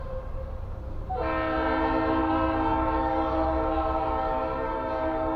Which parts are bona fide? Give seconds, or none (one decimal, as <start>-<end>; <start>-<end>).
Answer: 0.0-2.2